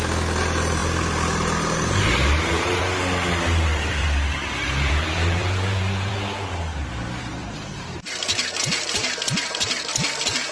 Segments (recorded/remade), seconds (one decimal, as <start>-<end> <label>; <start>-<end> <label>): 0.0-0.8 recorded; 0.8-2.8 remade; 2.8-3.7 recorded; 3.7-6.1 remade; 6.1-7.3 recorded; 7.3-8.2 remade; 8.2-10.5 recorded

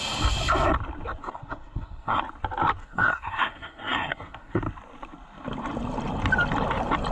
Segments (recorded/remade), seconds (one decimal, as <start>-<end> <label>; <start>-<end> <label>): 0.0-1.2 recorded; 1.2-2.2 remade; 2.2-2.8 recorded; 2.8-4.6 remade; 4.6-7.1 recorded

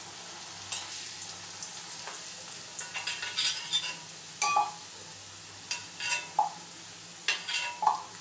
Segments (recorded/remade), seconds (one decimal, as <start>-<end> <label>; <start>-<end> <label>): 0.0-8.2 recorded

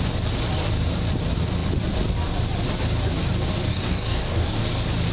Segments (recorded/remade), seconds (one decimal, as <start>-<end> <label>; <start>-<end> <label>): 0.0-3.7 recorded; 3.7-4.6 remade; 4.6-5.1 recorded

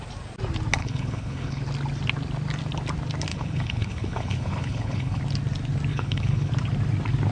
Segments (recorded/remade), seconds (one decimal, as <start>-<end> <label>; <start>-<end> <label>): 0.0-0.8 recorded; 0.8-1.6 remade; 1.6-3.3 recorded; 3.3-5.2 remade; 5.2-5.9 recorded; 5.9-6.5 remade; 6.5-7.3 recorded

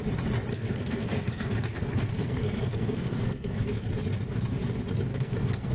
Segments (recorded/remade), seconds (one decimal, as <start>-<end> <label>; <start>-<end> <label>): 0.0-0.5 recorded; 0.5-3.9 remade; 3.9-5.1 recorded; 5.1-5.7 remade